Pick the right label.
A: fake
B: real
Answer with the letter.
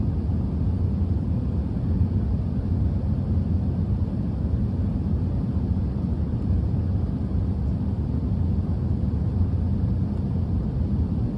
B